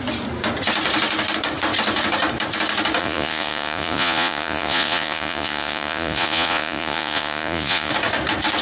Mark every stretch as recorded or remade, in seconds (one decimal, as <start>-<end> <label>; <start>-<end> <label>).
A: 0.0-3.0 recorded; 3.0-7.9 remade; 7.9-8.6 recorded